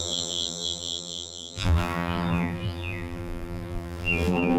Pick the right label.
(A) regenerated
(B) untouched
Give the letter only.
A